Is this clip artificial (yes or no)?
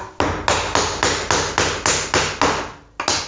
no